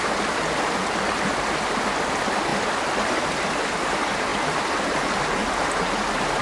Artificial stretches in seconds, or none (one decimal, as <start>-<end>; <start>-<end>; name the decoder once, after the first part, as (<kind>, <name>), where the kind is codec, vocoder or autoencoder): none